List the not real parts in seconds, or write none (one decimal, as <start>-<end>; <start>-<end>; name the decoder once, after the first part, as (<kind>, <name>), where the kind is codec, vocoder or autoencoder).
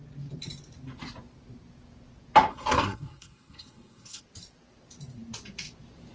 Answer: 2.5-4.2 (codec, SNAC)